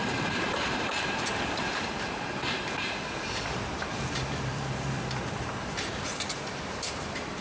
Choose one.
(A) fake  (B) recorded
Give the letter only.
A